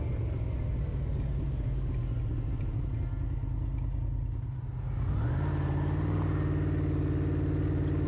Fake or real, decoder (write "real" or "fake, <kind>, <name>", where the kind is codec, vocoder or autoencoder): real